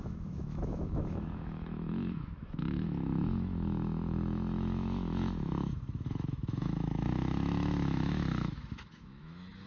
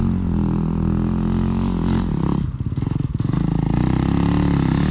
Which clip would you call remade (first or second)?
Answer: first